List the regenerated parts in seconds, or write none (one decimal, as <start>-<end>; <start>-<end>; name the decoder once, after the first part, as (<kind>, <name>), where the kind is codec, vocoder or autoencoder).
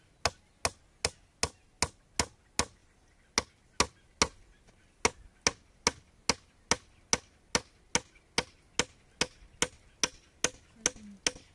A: none